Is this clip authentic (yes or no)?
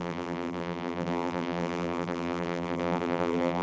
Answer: no